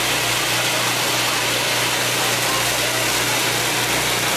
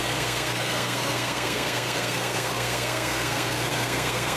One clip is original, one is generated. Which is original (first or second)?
first